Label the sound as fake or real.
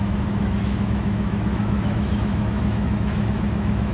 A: fake